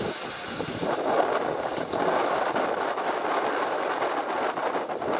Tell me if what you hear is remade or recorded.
recorded